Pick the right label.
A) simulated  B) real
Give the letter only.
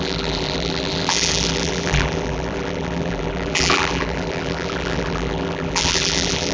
A